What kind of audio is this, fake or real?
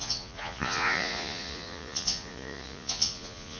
fake